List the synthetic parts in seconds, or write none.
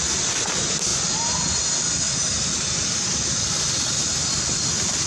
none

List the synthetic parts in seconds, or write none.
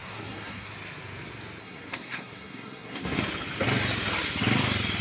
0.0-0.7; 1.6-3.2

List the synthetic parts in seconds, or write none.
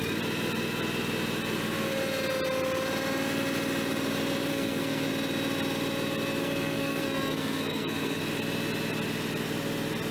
4.5-5.1; 6.4-8.2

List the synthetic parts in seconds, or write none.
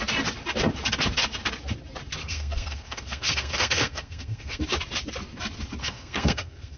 2.2-4.6; 5.8-6.8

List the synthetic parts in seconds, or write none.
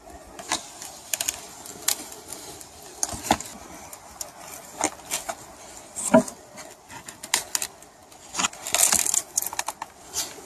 none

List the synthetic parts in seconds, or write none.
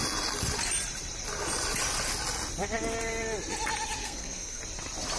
4.0-4.6